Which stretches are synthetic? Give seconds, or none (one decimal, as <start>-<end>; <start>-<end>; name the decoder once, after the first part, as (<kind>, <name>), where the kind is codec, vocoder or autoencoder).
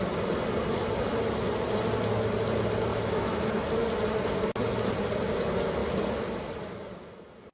2.9-3.4 (autoencoder, DAC-VAE)